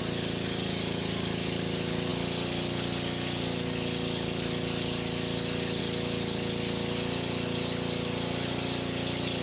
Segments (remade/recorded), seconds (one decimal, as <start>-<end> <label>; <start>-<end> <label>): 0.0-9.4 recorded